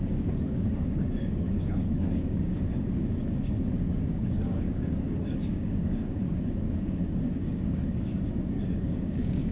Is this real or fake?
fake